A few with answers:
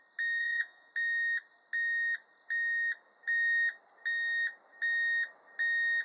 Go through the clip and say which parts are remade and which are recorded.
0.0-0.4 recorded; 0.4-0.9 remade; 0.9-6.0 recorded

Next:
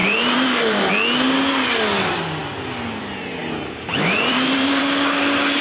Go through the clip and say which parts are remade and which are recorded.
0.0-0.9 remade; 0.9-3.4 recorded; 3.4-4.8 remade; 4.8-5.6 recorded

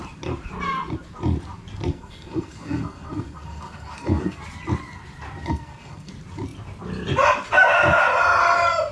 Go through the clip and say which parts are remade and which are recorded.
0.0-1.9 recorded; 1.9-4.4 remade; 4.4-5.5 recorded; 5.5-6.1 remade; 6.1-8.9 recorded